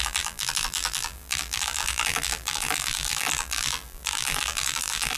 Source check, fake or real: fake